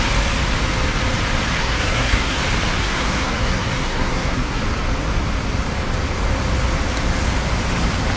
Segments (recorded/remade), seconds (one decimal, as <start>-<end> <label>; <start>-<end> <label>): 0.0-1.6 recorded; 1.6-2.4 remade; 2.4-2.8 recorded; 2.8-4.6 remade; 4.6-8.2 recorded